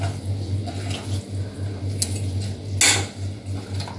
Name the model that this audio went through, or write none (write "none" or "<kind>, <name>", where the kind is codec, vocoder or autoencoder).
none